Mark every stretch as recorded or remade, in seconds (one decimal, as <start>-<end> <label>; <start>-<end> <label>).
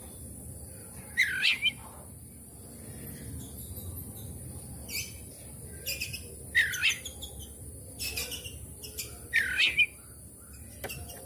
0.0-11.3 recorded